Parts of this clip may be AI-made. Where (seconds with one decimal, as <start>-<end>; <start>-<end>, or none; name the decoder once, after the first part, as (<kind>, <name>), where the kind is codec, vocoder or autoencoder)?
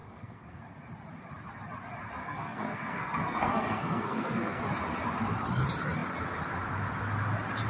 0.0-0.6 (codec, SNAC); 2.2-4.6